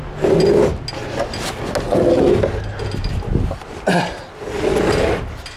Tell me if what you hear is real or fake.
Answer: real